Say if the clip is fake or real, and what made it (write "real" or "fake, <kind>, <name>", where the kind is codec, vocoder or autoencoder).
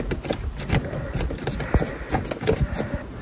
real